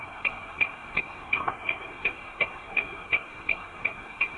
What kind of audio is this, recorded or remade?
remade